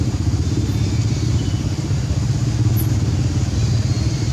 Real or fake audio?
real